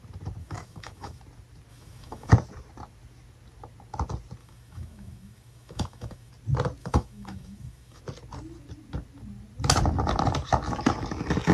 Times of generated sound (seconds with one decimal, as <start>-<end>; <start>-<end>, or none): 0.4-1.2; 1.7-2.3; 4.4-6.3; 6.8-8.0